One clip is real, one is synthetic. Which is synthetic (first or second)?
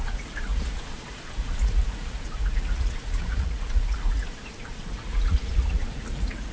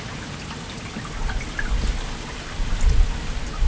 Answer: first